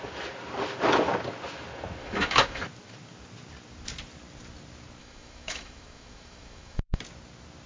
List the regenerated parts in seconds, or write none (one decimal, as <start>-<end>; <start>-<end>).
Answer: 2.0-2.6; 5.0-7.0